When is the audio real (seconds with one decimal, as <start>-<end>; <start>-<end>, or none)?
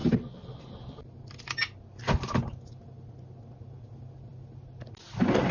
0.0-5.5